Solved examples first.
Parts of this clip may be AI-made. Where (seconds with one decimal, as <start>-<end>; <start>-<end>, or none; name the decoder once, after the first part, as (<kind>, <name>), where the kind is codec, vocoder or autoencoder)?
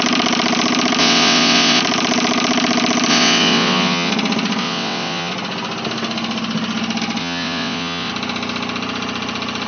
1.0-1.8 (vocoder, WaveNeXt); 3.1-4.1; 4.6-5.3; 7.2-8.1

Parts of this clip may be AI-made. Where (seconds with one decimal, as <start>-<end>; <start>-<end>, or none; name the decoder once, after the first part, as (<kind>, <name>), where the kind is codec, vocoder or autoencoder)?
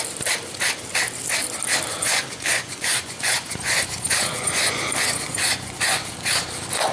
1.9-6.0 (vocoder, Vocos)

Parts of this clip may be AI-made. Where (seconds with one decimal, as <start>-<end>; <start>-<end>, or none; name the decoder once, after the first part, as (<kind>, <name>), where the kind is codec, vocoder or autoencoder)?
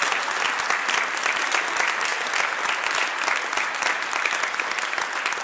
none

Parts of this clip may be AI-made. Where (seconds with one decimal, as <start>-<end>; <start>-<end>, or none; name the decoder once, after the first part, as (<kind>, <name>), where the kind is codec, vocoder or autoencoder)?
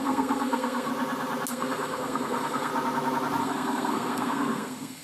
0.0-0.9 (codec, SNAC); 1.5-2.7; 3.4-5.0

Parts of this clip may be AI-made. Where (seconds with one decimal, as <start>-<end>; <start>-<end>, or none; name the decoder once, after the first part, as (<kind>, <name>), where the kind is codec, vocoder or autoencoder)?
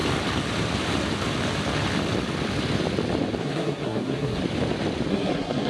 3.4-4.4 (codec, SNAC); 5.1-5.7